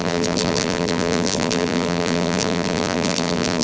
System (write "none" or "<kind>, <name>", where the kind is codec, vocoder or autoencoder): vocoder, BigVGAN v2